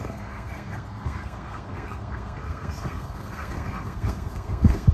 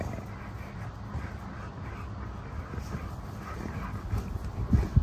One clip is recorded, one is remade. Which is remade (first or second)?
first